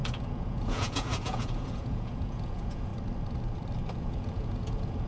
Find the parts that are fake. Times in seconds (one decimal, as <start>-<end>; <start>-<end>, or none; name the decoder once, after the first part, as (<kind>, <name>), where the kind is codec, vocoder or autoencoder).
0.0-2.9 (vocoder, Vocos); 4.0-5.1